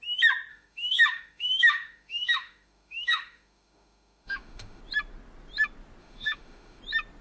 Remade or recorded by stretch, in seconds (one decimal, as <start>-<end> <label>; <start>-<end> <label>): 0.0-0.5 recorded; 0.5-4.8 remade; 4.8-6.0 recorded; 6.0-6.8 remade; 6.8-7.2 recorded